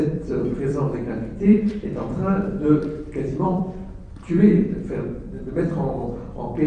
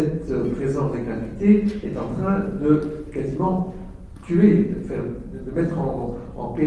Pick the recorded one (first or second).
second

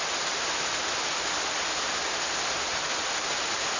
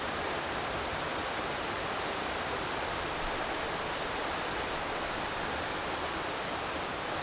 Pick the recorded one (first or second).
first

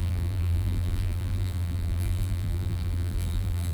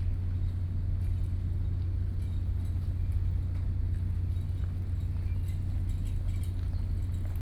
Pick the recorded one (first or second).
second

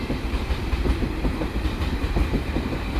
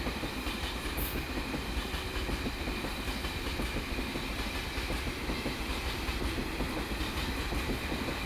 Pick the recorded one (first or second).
second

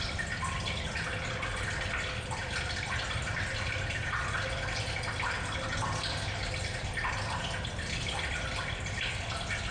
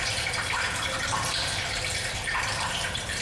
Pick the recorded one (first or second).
first